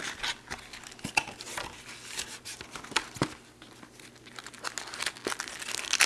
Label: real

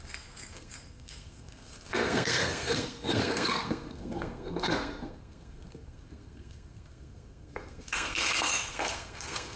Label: fake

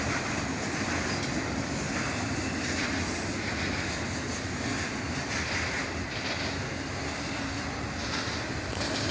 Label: real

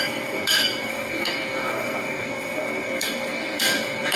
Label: fake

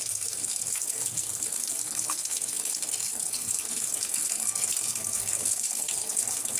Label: fake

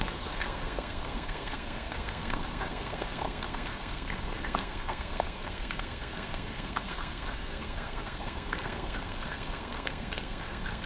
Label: fake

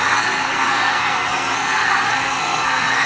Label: fake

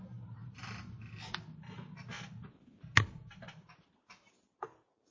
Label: real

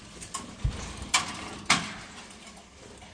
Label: real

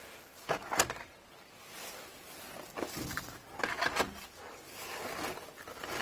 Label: real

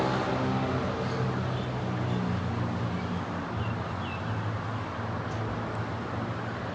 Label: real